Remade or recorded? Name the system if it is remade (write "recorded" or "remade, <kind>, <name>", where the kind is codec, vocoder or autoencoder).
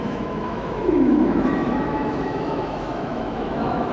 remade, autoencoder, DAC-VAE